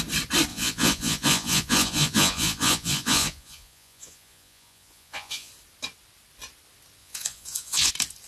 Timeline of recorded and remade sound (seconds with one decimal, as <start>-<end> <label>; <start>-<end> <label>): 0.0-0.5 recorded; 0.5-5.5 remade; 5.5-7.0 recorded; 7.0-7.9 remade; 7.9-8.3 recorded